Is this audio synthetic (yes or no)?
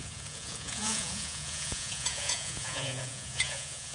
yes